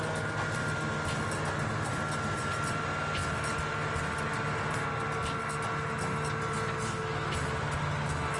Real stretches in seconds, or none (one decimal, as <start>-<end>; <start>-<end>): 0.0-8.4